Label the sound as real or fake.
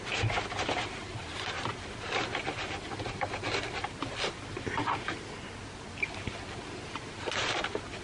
real